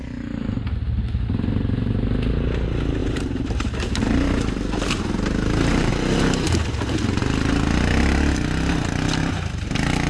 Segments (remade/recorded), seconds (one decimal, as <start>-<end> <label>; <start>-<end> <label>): 0.0-3.0 recorded; 3.0-5.9 remade; 5.9-10.1 recorded